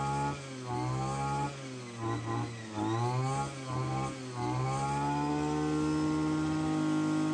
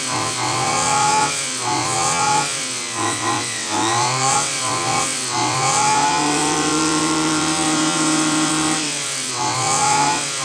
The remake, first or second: second